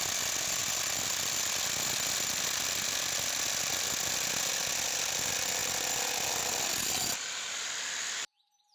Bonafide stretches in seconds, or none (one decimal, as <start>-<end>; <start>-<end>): 0.0-8.7